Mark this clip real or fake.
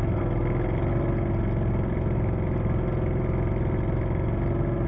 real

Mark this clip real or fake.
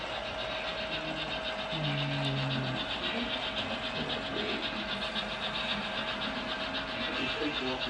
real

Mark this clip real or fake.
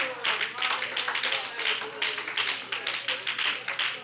real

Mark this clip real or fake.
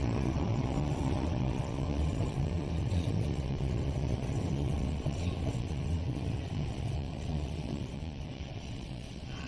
fake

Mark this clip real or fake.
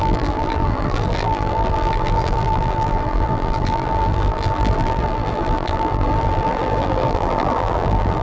fake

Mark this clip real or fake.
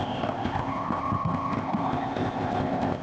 fake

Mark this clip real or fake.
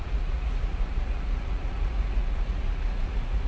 fake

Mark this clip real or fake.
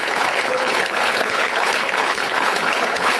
fake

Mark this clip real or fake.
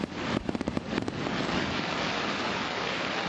fake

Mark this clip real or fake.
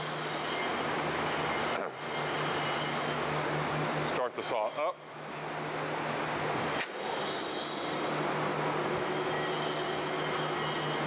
real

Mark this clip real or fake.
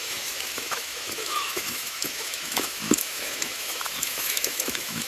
fake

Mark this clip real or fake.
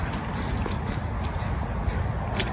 real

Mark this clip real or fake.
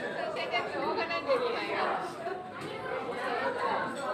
fake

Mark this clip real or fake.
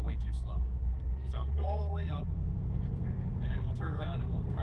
fake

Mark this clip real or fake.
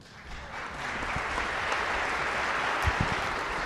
real